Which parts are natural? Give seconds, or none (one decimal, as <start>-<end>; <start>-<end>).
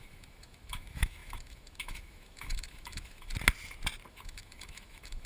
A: 3.3-4.1